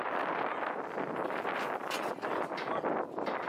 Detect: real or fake real